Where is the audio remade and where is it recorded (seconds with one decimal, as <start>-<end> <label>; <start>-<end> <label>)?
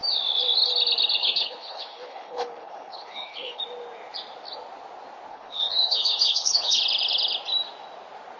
0.0-1.2 recorded; 1.2-3.6 remade; 3.6-5.3 recorded; 5.3-6.8 remade; 6.8-8.4 recorded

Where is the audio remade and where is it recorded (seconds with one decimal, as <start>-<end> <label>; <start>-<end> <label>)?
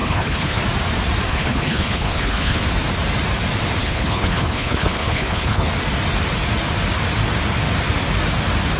0.0-0.6 remade; 0.6-1.3 recorded; 1.3-2.6 remade; 2.6-3.8 recorded; 3.8-5.7 remade; 5.7-8.8 recorded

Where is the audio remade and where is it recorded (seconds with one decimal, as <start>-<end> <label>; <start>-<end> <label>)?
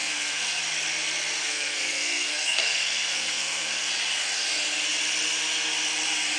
0.0-0.6 remade; 0.6-1.4 recorded; 1.4-3.9 remade; 3.9-6.4 recorded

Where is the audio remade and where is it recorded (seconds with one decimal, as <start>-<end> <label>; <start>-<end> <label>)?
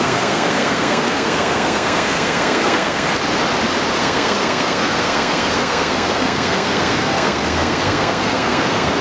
0.0-3.2 remade; 3.2-4.0 recorded; 4.0-9.0 remade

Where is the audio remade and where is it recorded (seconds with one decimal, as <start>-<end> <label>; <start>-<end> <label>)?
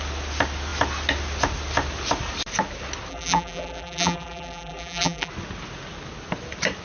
0.0-3.1 recorded; 3.1-5.3 remade; 5.3-6.8 recorded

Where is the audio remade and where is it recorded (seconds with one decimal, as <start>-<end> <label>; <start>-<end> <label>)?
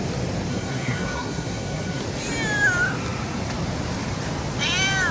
0.0-0.5 recorded; 0.5-2.0 remade; 2.0-5.1 recorded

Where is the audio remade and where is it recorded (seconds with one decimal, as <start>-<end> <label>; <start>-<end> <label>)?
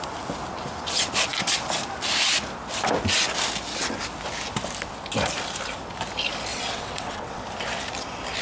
0.0-6.5 recorded; 6.5-7.4 remade; 7.4-8.4 recorded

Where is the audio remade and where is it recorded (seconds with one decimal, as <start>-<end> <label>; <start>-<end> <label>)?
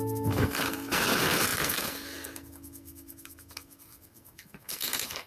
0.0-5.3 remade